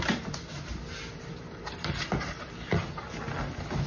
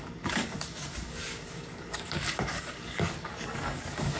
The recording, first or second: first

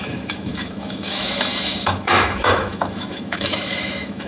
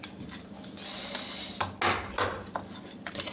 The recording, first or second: second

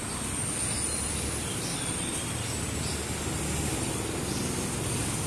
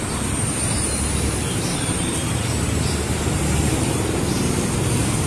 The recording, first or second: first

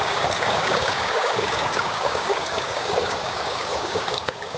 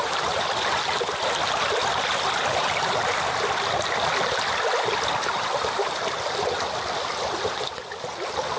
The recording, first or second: second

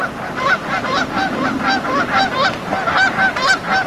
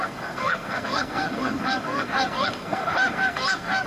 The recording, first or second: first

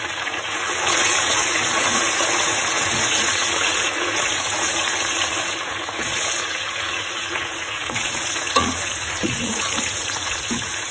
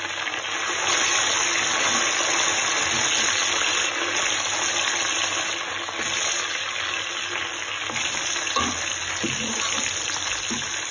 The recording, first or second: second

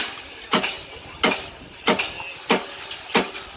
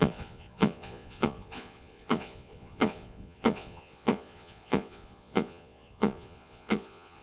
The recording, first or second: first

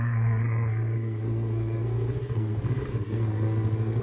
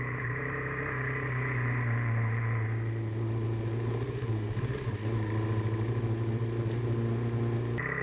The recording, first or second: second